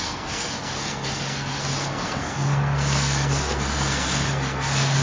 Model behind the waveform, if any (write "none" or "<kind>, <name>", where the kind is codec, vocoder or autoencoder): codec, SNAC